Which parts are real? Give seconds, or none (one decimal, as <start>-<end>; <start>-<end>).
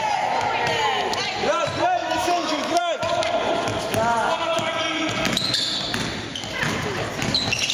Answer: 0.0-2.0; 2.8-7.7